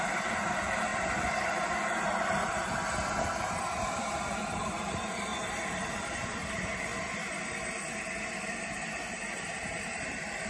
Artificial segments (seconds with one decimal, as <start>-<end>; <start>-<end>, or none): 0.0-0.9; 1.9-5.3; 5.9-10.5